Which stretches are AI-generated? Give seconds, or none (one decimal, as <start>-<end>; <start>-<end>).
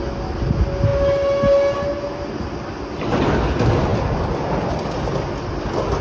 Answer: none